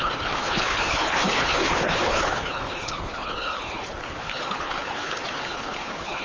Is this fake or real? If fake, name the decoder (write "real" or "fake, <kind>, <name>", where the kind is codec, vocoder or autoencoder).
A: fake, codec, HILCodec